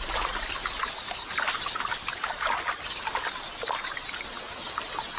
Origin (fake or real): real